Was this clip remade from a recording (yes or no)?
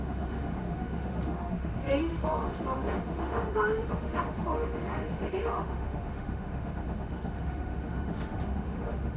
yes